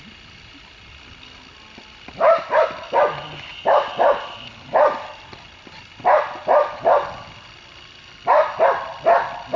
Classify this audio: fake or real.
real